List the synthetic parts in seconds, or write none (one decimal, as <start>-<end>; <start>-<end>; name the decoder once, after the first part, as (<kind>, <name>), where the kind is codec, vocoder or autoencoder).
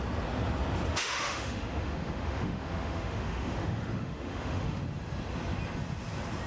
0.9-4.8 (autoencoder, DAC-VAE)